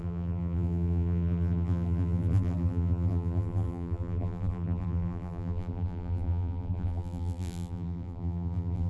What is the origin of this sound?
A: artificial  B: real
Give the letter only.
A